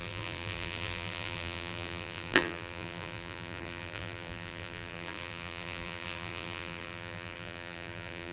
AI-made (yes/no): yes